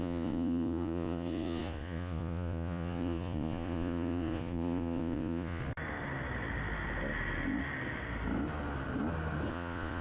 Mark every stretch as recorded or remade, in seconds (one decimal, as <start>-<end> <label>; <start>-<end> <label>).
0.0-5.6 remade; 5.6-9.5 recorded; 9.5-10.0 remade